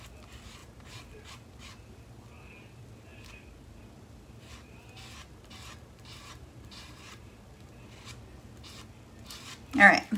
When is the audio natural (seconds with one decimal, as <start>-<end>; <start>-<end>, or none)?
0.0-0.6; 1.3-5.2; 7.8-10.2